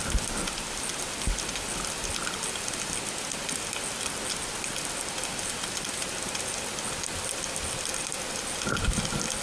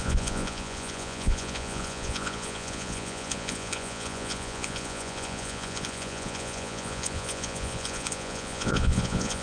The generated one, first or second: second